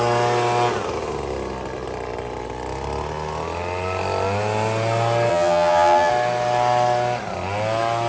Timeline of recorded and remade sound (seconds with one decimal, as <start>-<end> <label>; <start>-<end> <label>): 0.0-5.3 recorded; 5.3-6.1 remade; 6.1-8.1 recorded